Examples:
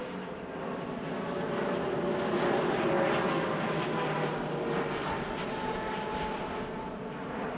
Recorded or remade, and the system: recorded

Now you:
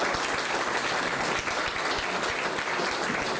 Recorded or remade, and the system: recorded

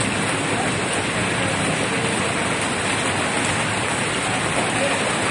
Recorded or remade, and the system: recorded